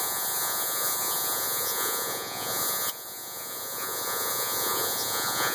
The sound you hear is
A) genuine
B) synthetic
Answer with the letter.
B